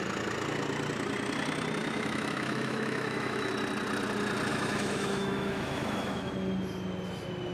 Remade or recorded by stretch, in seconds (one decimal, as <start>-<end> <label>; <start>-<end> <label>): 0.0-1.8 recorded; 1.8-3.5 remade; 3.5-4.5 recorded; 4.5-6.3 remade; 6.3-7.5 recorded